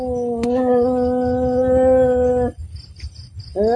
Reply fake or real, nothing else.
real